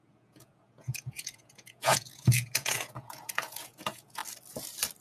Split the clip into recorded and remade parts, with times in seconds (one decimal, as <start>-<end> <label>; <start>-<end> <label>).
0.0-4.2 remade; 4.2-5.0 recorded